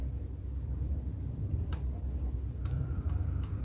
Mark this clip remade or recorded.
remade